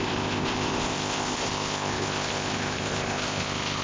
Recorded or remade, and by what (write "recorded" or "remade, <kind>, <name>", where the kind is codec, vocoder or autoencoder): remade, codec, ZipCodec